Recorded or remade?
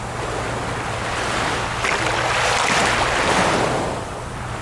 recorded